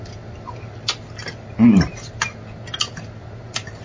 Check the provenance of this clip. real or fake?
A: real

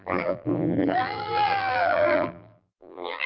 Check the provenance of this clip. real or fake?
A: fake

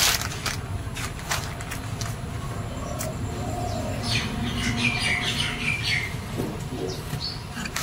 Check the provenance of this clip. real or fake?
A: real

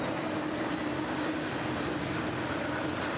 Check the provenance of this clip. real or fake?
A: real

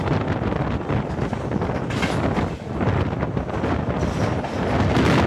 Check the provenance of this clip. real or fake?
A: real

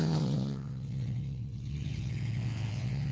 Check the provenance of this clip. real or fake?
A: fake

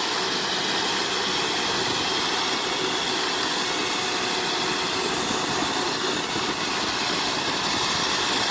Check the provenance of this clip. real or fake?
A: real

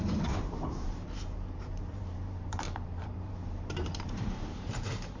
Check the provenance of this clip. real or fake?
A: fake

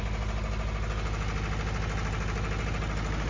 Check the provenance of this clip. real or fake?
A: real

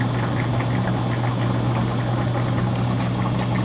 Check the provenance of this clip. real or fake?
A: real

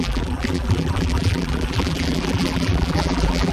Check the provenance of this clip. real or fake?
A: fake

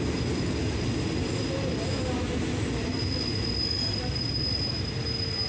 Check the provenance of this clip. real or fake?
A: real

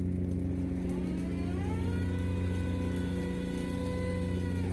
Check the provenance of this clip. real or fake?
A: real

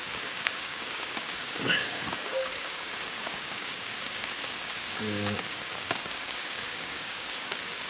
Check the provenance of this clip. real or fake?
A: fake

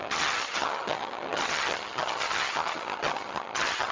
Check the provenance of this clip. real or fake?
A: fake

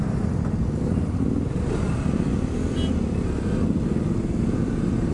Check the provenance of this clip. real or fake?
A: real